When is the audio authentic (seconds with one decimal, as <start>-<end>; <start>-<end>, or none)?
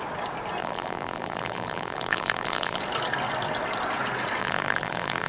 0.0-0.6; 2.8-4.4